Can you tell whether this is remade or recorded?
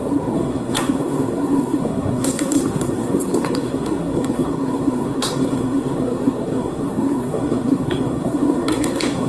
remade